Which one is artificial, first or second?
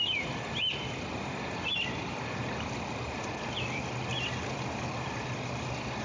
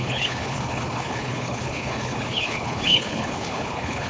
second